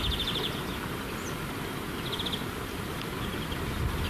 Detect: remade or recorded recorded